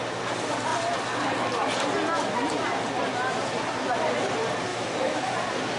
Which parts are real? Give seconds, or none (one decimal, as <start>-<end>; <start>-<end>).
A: 0.0-4.7; 5.3-5.8